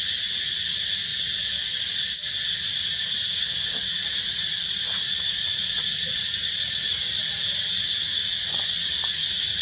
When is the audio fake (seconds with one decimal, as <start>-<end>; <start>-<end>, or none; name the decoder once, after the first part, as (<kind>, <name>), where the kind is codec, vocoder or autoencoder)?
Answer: 0.0-1.1 (vocoder, Vocos); 2.8-7.0; 7.9-9.6